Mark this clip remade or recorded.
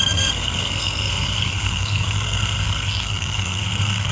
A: remade